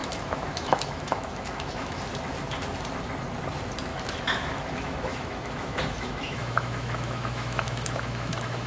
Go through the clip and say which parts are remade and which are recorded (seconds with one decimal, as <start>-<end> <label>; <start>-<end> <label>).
0.0-2.0 remade; 2.0-3.9 recorded; 3.9-8.7 remade